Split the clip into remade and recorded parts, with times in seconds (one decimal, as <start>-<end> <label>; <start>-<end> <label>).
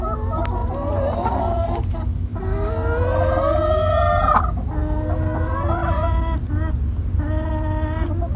0.0-0.6 recorded; 0.6-1.7 remade; 1.7-8.4 recorded